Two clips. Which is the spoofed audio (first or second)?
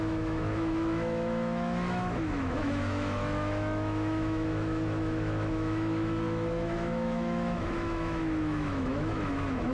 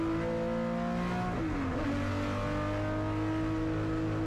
first